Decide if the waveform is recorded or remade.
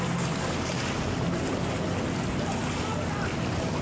recorded